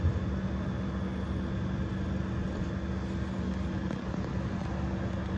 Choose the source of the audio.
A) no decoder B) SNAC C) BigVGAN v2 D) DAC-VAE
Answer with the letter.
A